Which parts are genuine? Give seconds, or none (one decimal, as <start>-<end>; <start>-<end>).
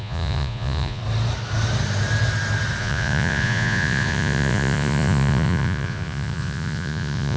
1.0-2.8